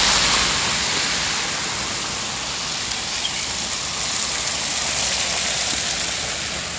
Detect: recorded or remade recorded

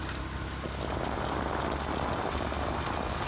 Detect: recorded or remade recorded